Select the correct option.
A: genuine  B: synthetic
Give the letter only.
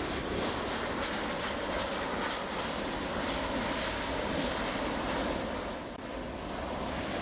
A